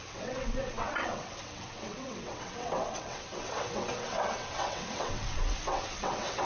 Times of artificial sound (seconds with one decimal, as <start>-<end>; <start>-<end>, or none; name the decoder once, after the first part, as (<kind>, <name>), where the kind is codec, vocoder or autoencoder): 0.0-6.5 (vocoder, WaveNeXt)